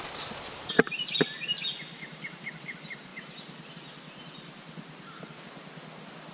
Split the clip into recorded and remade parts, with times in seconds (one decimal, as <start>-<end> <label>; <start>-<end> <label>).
0.0-6.3 recorded